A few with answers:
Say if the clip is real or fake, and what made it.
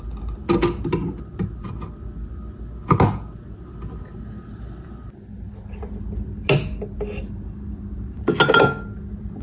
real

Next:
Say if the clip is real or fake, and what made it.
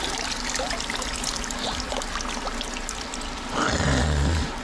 real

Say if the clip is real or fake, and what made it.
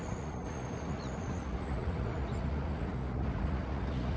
fake, vocoder, Vocos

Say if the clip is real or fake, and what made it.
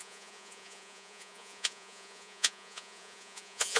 fake, vocoder, Vocos